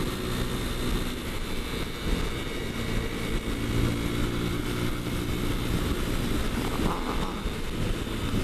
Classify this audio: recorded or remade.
recorded